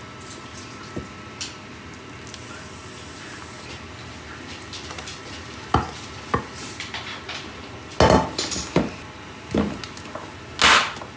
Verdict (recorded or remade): recorded